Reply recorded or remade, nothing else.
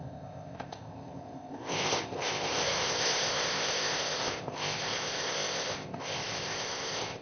remade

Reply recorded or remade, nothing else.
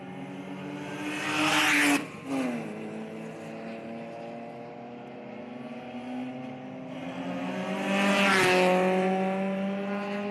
recorded